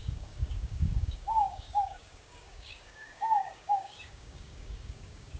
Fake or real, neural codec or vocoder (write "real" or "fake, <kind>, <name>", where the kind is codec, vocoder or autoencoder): fake, codec, DAC